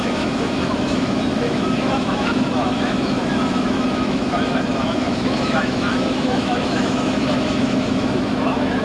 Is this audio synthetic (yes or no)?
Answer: yes